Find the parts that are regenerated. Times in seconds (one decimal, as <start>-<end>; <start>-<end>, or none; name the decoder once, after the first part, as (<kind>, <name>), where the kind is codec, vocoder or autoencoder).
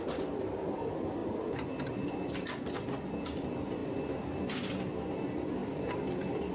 5.6-6.5 (vocoder, BigVGAN v2)